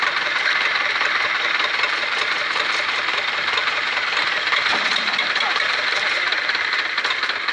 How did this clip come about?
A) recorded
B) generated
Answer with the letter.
B